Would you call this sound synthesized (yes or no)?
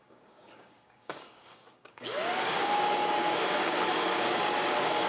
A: yes